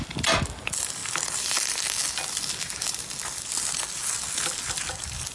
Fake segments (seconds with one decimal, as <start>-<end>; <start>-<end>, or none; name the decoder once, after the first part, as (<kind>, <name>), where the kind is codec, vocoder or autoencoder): none